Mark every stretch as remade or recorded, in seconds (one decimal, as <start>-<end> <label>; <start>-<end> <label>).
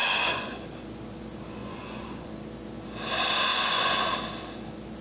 0.0-0.6 remade; 0.6-1.6 recorded; 1.6-2.3 remade; 2.3-3.5 recorded; 3.5-4.1 remade; 4.1-5.0 recorded